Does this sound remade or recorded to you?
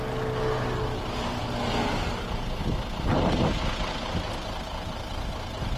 recorded